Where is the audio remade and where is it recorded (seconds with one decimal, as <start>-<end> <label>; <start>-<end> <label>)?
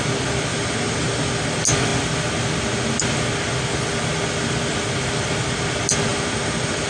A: 0.0-0.5 recorded; 0.5-1.4 remade; 1.4-6.1 recorded; 6.1-6.9 remade